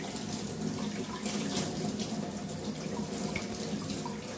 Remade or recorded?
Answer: recorded